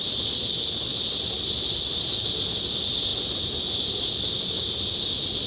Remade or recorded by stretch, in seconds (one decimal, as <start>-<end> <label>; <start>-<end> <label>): 0.0-0.9 recorded; 0.9-2.1 remade; 2.1-5.5 recorded